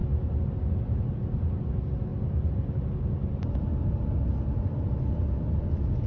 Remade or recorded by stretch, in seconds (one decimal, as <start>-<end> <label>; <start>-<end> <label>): 0.0-6.1 recorded